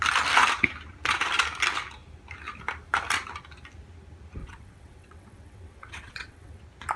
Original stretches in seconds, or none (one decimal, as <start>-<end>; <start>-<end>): 0.0-4.4; 6.6-7.0